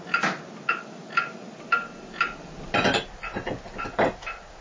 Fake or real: real